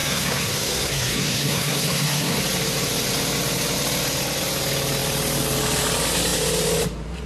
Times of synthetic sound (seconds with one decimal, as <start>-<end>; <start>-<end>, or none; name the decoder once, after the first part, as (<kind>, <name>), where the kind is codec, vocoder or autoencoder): 0.0-2.4 (codec, SNAC)